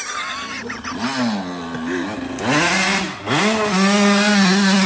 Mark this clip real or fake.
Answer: real